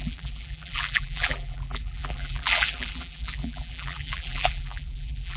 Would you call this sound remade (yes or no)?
yes